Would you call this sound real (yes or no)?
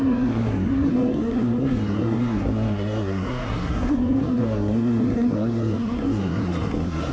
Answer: no